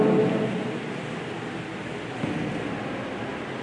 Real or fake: real